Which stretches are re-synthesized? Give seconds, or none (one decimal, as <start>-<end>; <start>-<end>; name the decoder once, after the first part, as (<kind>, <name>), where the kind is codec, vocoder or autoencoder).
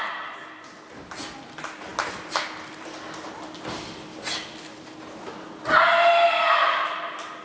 none